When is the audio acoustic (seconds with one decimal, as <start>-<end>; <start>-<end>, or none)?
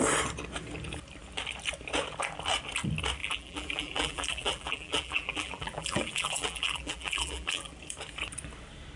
0.0-3.2; 7.7-9.0